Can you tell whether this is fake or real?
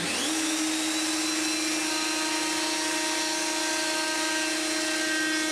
real